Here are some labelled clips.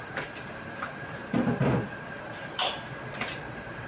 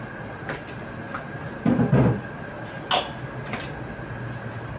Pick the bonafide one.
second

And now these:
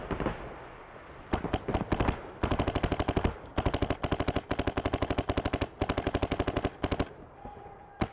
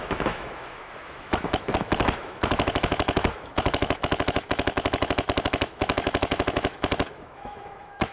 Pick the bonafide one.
first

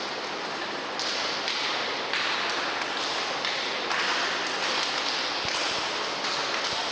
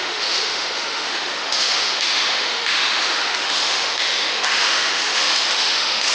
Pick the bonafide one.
first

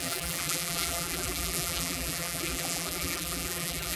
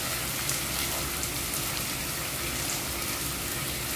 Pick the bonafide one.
second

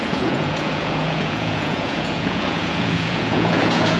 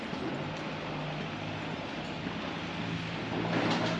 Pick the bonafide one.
second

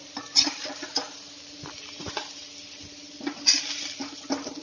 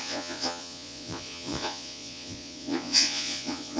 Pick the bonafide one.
first